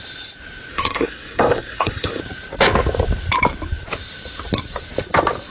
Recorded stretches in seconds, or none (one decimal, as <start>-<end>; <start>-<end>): 0.0-0.7; 2.2-5.5